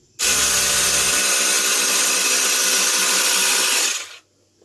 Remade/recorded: recorded